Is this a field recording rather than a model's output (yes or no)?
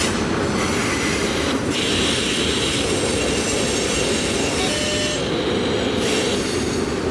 yes